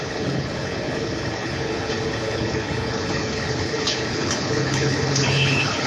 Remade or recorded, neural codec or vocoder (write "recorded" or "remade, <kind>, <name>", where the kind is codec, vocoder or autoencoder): remade, codec, HILCodec